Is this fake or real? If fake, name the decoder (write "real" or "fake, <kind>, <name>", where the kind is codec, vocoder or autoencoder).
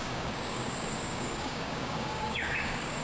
fake, codec, DAC